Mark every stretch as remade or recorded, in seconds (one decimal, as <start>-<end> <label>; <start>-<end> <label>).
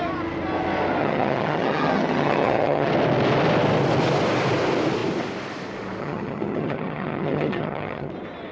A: 0.0-1.0 recorded; 1.0-2.9 remade; 2.9-6.0 recorded; 6.0-8.1 remade; 8.1-8.5 recorded